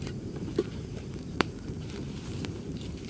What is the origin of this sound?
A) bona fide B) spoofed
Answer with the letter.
B